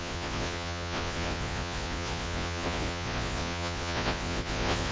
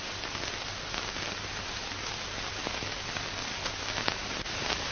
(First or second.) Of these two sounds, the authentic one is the second